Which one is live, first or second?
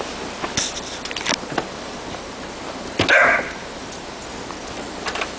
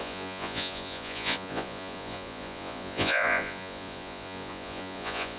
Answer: first